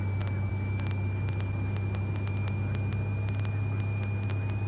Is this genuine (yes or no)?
yes